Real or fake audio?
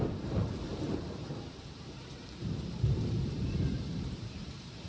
fake